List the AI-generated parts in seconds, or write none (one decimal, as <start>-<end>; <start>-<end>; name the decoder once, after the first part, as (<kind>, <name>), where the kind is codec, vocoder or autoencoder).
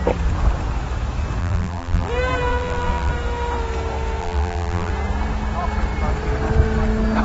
1.4-2.1 (vocoder, BigVGAN v2); 2.5-3.1; 4.2-4.9